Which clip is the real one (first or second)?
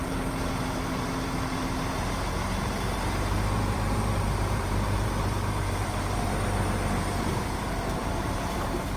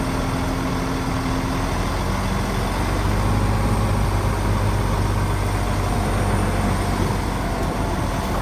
second